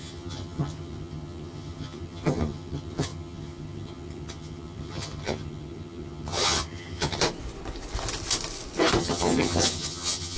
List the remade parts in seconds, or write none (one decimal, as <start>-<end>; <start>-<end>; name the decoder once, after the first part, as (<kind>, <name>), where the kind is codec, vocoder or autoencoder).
0.0-7.2 (vocoder, HiFi-GAN); 9.0-10.4